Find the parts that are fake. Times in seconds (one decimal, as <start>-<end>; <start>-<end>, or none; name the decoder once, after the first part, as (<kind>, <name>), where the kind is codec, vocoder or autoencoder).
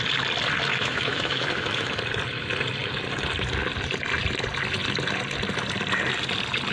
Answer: 0.7-1.9 (autoencoder, DAC-VAE)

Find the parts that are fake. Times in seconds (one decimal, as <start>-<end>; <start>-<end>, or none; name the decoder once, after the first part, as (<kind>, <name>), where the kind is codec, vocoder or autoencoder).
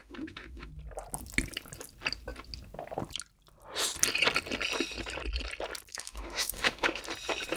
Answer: 0.0-0.7 (autoencoder, DAC-VAE); 5.9-7.0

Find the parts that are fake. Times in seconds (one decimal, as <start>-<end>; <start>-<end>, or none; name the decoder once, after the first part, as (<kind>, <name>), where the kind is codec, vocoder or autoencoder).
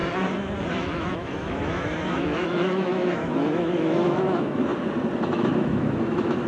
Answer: 0.7-4.7 (autoencoder, DAC-VAE); 5.3-6.5